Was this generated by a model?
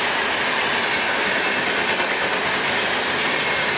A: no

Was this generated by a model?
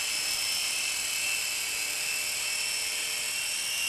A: no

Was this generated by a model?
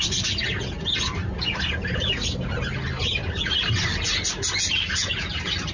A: no